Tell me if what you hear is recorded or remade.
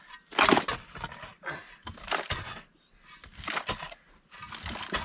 recorded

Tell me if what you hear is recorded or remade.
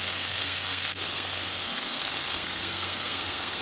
remade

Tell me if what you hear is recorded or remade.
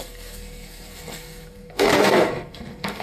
remade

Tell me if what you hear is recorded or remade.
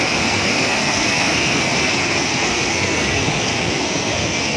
remade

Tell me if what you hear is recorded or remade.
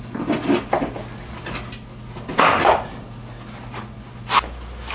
recorded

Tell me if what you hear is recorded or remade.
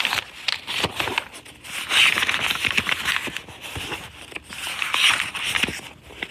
recorded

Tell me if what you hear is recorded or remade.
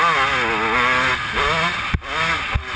recorded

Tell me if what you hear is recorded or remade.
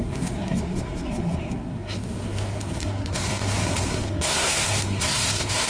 remade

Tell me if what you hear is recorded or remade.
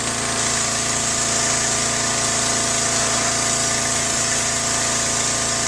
recorded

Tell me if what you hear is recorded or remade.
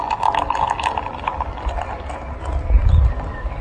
recorded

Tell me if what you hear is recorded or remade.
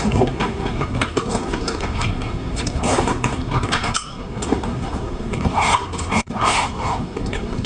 remade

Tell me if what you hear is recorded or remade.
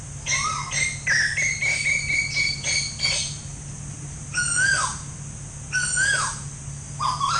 recorded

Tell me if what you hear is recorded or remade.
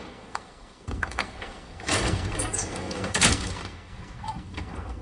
remade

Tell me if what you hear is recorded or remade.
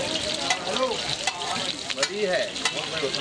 recorded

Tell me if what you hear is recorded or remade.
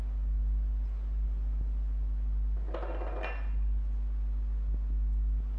recorded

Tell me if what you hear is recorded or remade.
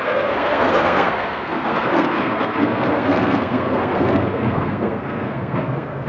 remade